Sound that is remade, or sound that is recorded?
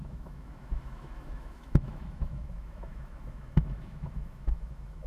remade